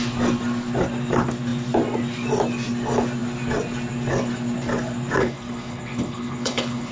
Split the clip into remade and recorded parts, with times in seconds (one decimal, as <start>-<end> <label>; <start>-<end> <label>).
0.0-5.2 recorded; 5.2-6.9 remade